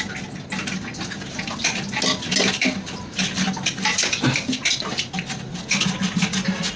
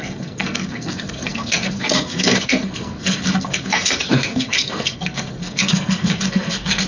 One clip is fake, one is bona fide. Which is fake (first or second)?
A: second